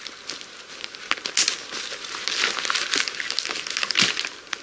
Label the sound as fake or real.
real